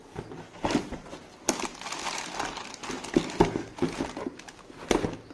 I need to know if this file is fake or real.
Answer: real